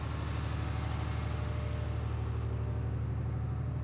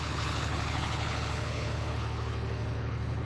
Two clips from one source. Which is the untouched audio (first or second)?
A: first